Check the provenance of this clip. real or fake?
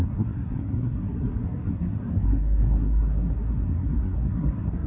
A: fake